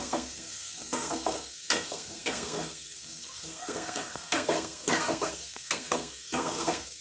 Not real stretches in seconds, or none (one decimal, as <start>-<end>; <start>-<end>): 0.0-7.0